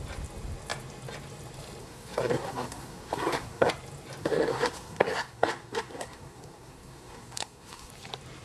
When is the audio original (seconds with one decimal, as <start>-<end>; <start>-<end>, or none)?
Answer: 0.0-1.8; 3.7-4.2; 7.9-8.4

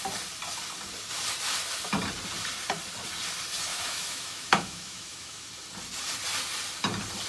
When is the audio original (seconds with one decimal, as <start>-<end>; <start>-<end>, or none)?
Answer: 0.0-3.7; 5.5-7.3

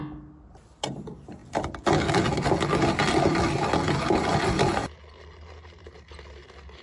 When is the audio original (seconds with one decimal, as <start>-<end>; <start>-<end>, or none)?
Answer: 0.0-6.8

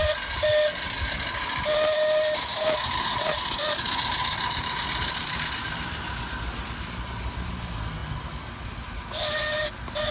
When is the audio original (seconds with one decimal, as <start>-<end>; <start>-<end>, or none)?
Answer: 0.0-2.5; 6.6-10.1

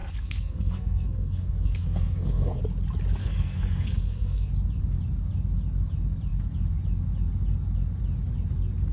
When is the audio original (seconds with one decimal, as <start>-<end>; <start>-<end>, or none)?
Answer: 2.6-3.2; 4.5-8.9